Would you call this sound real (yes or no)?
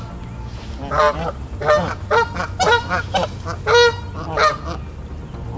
yes